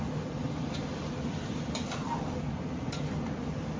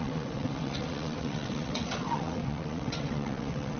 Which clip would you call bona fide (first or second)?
first